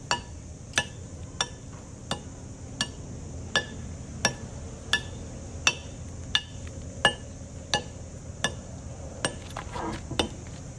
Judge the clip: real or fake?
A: real